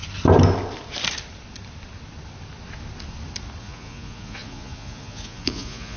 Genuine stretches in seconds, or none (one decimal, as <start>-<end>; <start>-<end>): 0.0-3.6